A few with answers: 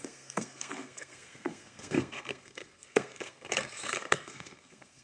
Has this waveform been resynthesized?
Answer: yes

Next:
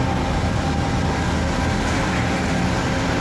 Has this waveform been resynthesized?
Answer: no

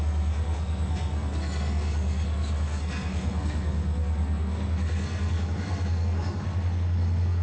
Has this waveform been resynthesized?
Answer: yes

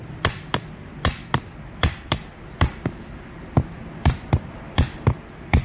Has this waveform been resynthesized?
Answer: no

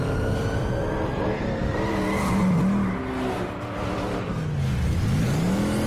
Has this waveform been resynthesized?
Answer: no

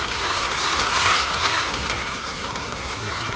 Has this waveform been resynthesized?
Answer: yes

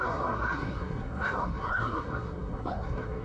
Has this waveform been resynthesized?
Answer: yes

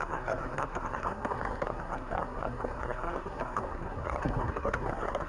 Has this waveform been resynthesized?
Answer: yes